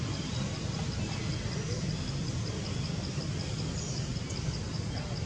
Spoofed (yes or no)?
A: no